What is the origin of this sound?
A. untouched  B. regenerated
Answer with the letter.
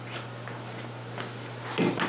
A